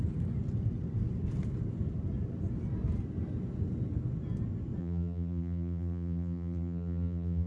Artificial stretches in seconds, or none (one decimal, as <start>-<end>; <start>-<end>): 4.8-7.5